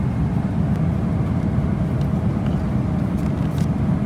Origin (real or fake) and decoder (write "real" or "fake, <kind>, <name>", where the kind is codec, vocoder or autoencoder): real